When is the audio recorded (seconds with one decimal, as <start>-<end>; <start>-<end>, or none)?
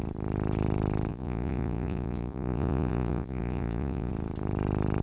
0.0-1.1; 4.1-5.0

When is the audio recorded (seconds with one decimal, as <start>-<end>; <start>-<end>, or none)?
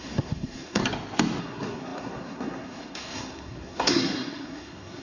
0.8-1.4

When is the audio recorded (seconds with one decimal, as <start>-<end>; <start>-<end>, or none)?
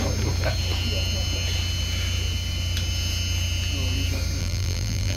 0.0-4.4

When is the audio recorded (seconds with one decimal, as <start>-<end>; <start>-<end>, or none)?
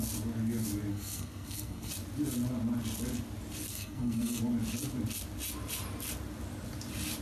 0.0-0.9; 1.9-3.7; 4.4-7.2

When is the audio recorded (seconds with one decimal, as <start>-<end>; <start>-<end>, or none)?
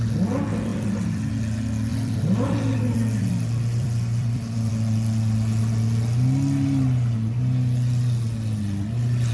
0.0-0.7; 1.3-1.9; 4.7-9.3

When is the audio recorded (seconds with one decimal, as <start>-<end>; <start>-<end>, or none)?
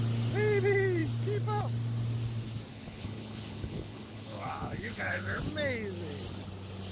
0.0-2.7; 5.4-6.9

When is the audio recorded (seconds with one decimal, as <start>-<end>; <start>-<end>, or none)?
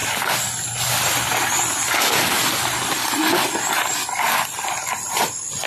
0.0-5.7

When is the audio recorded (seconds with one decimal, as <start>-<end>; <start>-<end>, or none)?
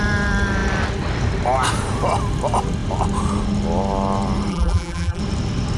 0.0-4.5; 5.2-5.8